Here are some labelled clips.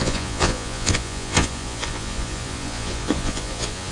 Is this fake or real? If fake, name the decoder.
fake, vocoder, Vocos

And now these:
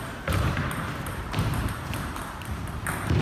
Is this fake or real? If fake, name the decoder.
fake, vocoder, BigVGAN v2